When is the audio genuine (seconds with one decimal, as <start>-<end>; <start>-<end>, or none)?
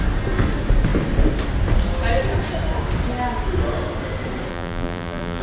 0.0-4.5